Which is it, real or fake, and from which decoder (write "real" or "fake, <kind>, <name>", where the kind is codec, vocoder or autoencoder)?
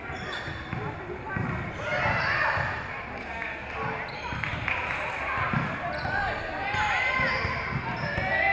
real